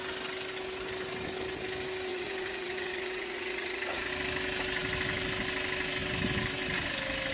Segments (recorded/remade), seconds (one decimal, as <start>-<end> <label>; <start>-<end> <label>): 0.0-2.1 recorded; 2.1-4.1 remade; 4.1-7.3 recorded